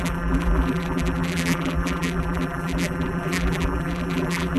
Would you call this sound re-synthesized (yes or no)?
yes